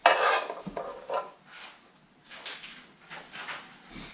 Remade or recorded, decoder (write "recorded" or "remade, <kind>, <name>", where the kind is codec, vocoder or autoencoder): recorded